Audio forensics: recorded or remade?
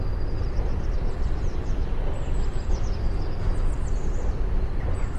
recorded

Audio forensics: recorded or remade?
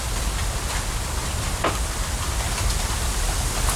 recorded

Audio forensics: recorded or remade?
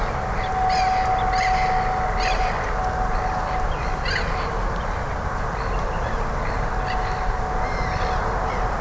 recorded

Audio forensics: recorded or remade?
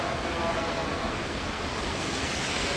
remade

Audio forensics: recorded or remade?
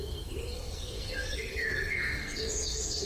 remade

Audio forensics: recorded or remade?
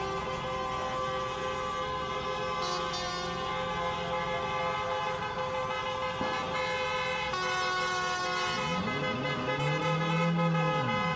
recorded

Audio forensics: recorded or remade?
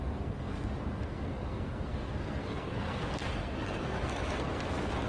remade